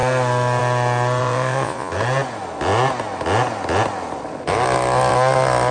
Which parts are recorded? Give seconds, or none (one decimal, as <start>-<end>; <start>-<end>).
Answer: 0.0-1.2; 1.9-5.7